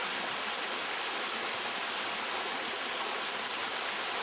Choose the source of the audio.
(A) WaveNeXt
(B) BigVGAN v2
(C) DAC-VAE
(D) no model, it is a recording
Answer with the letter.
D